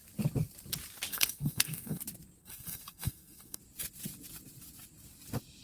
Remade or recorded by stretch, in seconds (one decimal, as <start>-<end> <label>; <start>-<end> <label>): 0.0-1.1 recorded; 1.1-2.0 remade; 2.0-2.4 recorded; 2.4-3.6 remade; 3.6-5.6 recorded